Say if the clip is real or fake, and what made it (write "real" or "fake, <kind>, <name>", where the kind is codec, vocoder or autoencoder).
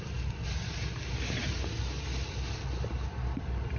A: real